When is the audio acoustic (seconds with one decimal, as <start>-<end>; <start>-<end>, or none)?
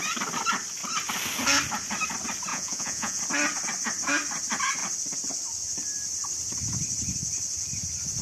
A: 0.0-2.5; 3.2-8.2